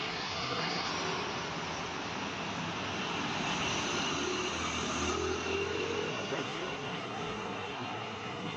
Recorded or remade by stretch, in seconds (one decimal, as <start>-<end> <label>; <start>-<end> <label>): 0.0-0.9 remade; 0.9-6.1 recorded; 6.1-8.6 remade